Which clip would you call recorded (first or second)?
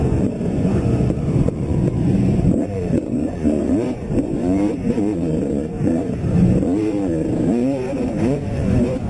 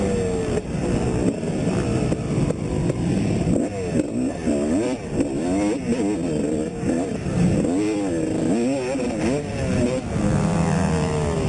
second